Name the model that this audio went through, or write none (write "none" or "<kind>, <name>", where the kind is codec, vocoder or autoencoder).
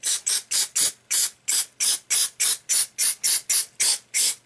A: none